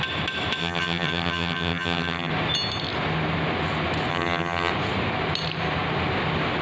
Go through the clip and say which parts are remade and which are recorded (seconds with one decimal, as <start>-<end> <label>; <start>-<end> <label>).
0.0-0.6 recorded; 0.6-2.3 remade; 2.3-4.1 recorded; 4.1-4.7 remade; 4.7-6.6 recorded